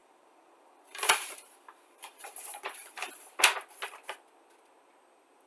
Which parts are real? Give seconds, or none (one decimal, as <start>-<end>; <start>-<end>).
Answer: 3.3-5.5